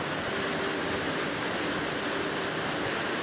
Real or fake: real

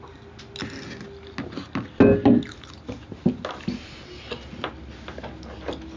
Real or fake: real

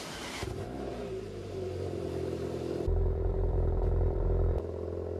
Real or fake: fake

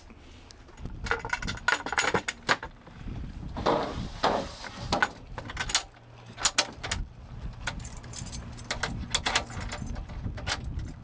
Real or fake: real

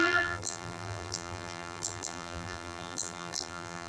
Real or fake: fake